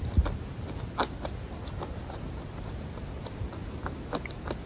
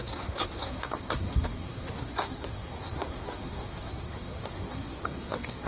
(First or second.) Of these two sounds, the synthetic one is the second